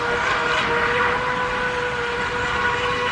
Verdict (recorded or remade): recorded